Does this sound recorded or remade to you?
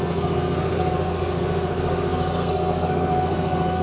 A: remade